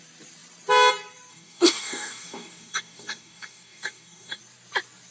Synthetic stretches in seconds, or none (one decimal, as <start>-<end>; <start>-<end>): 1.3-4.4